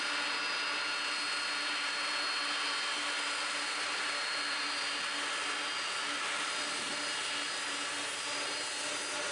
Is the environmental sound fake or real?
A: real